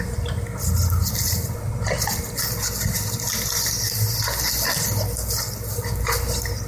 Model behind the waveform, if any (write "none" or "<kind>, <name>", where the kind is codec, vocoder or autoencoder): none